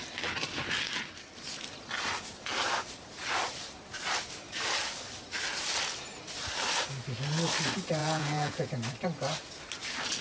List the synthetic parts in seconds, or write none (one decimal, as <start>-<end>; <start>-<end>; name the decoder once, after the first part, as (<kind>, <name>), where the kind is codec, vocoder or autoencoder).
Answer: 8.0-8.7 (vocoder, Vocos)